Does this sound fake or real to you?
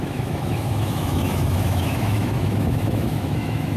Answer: fake